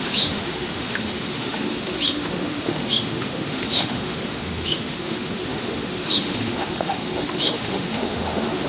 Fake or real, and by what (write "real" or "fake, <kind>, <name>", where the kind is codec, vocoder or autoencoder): fake, autoencoder, DAC-VAE